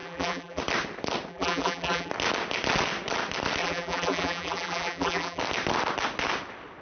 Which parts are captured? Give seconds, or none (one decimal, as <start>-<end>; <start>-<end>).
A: 0.6-1.3; 2.1-3.6; 5.4-6.8